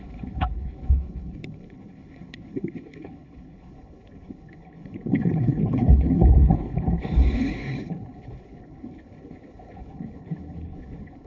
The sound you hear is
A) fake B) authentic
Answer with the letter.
A